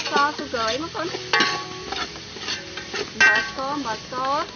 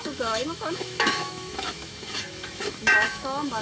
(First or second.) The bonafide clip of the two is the first